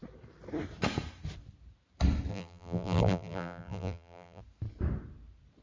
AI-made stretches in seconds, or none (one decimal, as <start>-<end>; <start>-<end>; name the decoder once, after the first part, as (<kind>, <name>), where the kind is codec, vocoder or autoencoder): 2.3-4.4 (vocoder, BigVGAN v2)